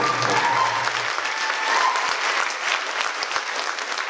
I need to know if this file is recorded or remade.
recorded